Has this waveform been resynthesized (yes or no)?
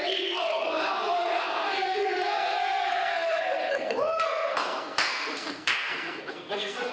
yes